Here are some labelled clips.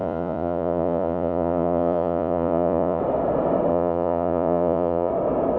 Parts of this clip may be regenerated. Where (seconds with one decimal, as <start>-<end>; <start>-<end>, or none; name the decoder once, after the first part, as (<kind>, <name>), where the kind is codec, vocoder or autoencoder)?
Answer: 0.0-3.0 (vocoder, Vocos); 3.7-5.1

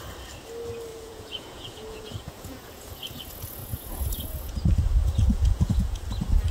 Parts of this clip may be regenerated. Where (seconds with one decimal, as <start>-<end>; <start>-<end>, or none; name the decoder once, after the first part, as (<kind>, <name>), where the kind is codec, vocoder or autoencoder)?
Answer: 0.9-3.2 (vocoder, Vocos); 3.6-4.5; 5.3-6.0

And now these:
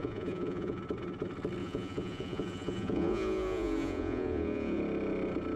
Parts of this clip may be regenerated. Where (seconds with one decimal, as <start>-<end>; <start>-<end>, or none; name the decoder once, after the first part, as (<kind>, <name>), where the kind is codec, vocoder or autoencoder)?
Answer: 0.0-0.8 (vocoder, Vocos); 1.6-4.8

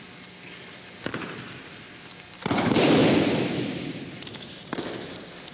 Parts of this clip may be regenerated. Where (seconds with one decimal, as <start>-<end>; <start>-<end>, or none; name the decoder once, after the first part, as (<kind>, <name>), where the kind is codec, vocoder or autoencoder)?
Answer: none

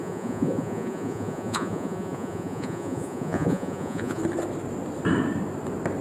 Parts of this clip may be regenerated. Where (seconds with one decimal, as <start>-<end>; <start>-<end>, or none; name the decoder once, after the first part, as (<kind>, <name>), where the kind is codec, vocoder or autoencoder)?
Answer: 0.0-4.2 (vocoder, Vocos)

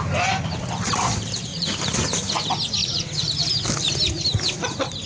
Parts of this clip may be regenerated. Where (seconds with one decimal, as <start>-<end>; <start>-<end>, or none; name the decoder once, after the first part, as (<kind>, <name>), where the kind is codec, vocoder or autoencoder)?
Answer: 1.5-2.4 (vocoder, Vocos); 2.8-3.5

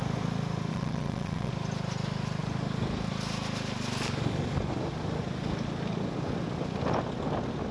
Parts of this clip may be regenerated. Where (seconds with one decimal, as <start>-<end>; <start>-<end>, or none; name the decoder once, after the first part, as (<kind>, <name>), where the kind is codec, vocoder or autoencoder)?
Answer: 0.7-1.5 (vocoder, Vocos)

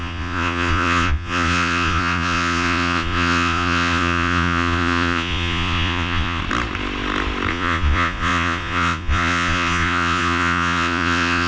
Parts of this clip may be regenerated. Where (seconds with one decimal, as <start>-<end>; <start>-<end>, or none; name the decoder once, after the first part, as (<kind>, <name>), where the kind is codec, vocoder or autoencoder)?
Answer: 0.0-6.4 (vocoder, Vocos); 7.5-11.5